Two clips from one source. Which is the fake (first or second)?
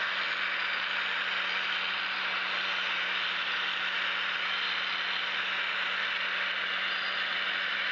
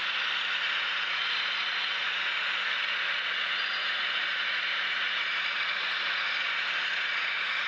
second